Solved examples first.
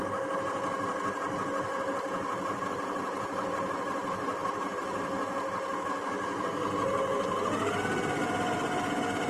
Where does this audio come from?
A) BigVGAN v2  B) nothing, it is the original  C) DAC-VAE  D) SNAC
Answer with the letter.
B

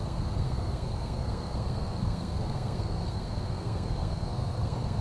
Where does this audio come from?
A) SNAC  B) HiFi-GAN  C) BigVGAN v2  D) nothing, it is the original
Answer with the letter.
A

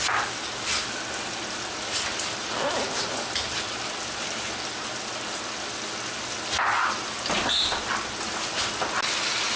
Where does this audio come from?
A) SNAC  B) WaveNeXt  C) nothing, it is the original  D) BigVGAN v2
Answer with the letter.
C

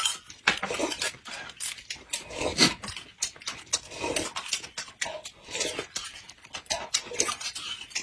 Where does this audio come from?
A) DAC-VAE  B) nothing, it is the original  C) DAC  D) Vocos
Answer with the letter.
B